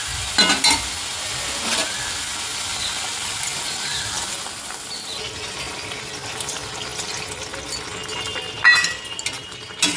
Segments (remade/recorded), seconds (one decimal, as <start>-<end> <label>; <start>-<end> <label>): 0.0-2.7 recorded; 2.7-4.3 remade; 4.3-10.0 recorded